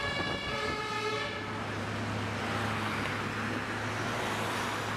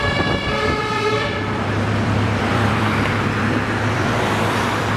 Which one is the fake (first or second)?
second